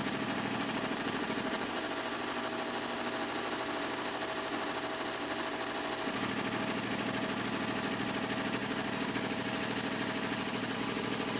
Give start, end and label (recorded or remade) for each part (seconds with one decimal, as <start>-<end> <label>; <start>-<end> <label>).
0.0-1.9 remade; 1.9-8.6 recorded; 8.6-9.1 remade; 9.1-11.4 recorded